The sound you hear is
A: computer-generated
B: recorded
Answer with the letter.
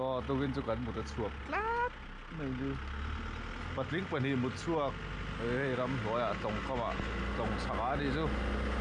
B